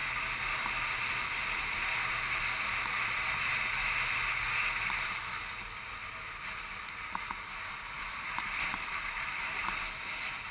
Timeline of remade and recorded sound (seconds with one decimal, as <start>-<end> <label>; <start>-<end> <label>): 0.0-10.5 recorded